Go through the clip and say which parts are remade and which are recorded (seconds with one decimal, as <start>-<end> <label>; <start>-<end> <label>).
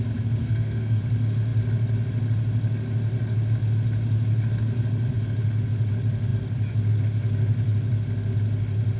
0.0-0.4 recorded; 0.4-1.0 remade; 1.0-9.0 recorded